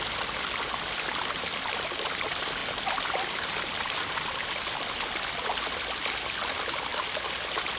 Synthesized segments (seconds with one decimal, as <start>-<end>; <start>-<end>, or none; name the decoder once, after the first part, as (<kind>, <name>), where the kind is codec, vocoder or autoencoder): none